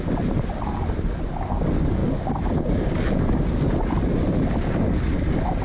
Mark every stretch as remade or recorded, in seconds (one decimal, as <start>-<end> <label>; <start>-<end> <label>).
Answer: 0.0-5.6 recorded